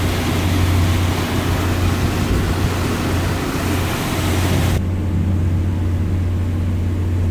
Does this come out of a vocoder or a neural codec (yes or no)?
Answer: no